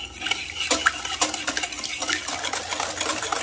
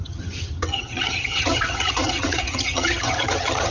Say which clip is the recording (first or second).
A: first